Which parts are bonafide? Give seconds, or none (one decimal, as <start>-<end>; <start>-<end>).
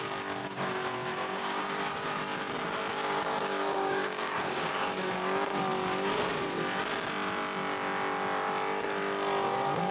0.0-0.4; 1.6-2.9; 5.1-9.9